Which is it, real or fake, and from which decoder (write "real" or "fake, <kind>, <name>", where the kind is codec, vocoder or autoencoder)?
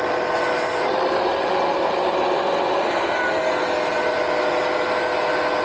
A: real